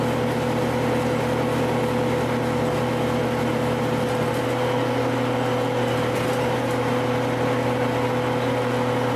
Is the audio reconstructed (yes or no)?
no